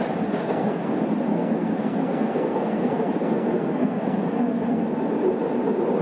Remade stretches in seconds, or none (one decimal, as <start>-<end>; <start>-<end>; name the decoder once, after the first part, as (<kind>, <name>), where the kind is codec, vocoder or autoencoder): 0.4-0.9 (codec, SNAC); 1.3-4.9